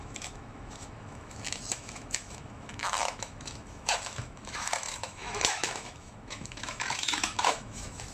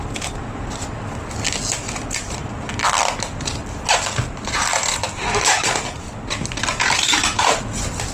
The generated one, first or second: first